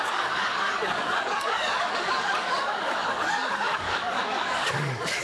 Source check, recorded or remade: remade